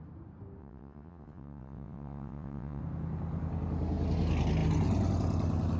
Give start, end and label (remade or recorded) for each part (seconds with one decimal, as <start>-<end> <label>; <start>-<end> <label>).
0.0-0.6 recorded; 0.6-2.8 remade; 2.8-5.8 recorded